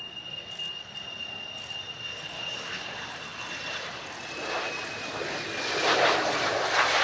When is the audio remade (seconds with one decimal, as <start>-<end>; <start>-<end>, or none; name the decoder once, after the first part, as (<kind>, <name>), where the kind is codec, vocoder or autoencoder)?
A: none